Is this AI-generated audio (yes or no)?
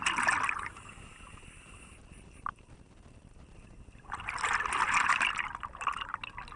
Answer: no